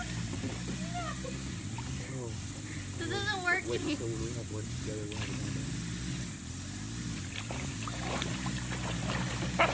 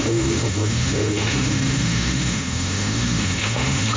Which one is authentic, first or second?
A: first